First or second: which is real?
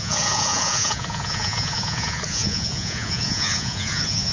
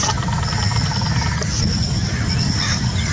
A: second